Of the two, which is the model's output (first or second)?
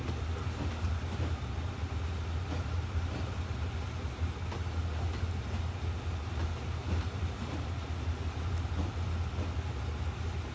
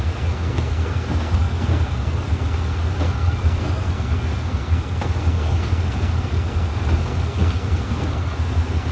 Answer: second